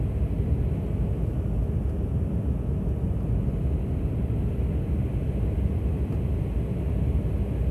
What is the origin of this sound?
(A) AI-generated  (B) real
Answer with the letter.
B